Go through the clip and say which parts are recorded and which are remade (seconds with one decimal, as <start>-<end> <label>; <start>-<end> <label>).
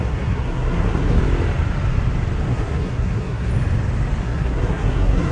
0.0-1.2 remade; 1.2-2.5 recorded; 2.5-3.5 remade; 3.5-4.2 recorded; 4.2-5.3 remade